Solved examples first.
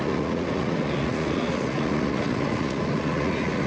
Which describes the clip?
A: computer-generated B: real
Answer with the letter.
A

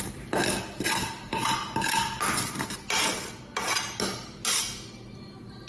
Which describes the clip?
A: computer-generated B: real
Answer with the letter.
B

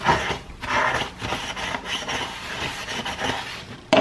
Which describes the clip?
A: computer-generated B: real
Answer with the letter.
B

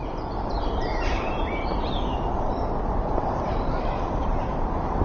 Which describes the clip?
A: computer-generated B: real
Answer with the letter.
A